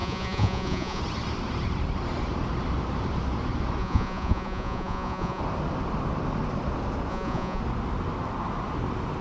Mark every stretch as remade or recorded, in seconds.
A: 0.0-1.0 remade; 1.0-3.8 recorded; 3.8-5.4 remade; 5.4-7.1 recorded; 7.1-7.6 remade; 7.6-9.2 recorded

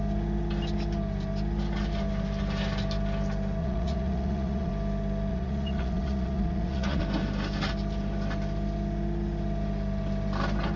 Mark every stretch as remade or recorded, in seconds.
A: 0.0-3.6 recorded; 3.6-4.7 remade; 4.7-5.3 recorded; 5.3-7.0 remade; 7.0-10.8 recorded

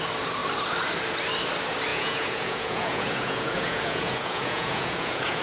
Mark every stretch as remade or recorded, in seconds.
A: 0.0-1.9 recorded; 1.9-5.4 remade

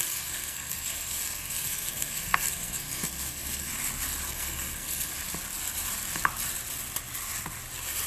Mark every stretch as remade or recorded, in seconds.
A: 0.0-3.7 remade; 3.7-4.3 recorded; 4.3-5.1 remade; 5.1-8.1 recorded